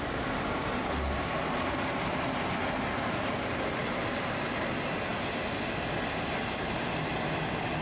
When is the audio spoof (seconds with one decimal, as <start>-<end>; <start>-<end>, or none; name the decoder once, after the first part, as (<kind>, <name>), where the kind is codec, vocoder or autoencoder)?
none